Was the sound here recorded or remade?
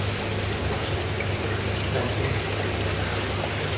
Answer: recorded